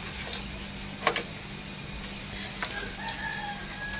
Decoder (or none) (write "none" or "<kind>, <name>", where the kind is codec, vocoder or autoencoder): none